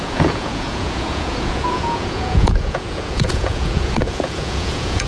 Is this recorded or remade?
remade